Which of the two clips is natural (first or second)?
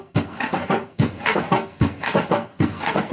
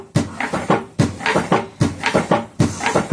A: second